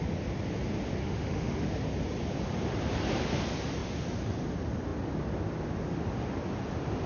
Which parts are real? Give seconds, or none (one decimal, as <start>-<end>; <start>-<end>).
0.0-1.0; 1.8-7.1

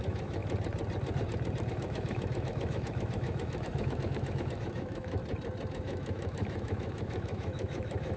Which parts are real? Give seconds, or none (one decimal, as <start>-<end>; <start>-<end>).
0.4-1.7; 5.2-5.7

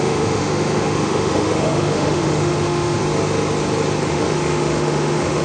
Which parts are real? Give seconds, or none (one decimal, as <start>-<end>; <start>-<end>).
3.0-4.1

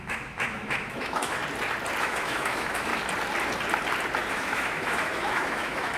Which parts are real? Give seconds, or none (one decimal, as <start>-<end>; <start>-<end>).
1.4-2.0; 2.9-4.3

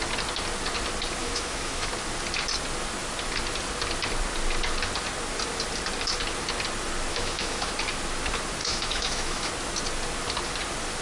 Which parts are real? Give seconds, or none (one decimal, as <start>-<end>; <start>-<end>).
0.0-1.2; 1.9-7.1; 7.7-8.6; 9.5-11.0

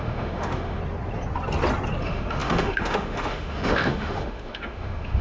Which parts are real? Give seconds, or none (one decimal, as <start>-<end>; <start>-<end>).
0.8-2.0

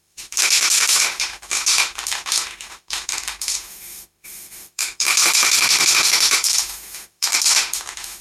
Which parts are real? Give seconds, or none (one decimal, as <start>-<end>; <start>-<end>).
none